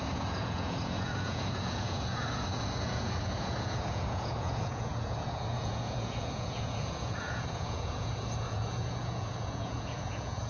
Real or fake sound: fake